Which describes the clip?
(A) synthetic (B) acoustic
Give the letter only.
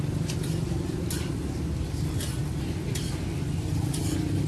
B